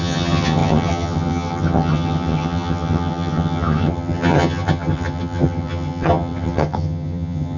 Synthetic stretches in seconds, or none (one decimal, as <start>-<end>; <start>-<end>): 0.0-7.6

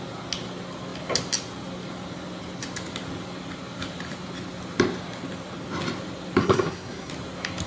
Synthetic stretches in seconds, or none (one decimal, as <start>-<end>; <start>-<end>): 6.4-7.1

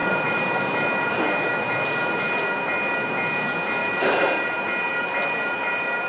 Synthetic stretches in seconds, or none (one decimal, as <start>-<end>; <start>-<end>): none

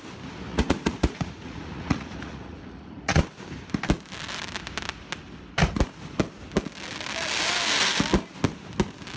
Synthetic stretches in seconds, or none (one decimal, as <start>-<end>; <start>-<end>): 0.5-3.2

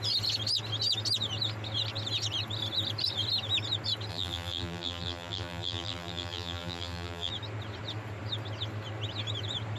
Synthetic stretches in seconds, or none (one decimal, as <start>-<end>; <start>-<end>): 4.1-7.3